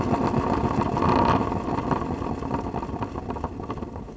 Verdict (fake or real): real